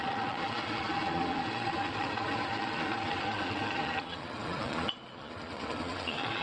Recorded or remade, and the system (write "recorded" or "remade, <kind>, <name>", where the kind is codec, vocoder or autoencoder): remade, vocoder, Vocos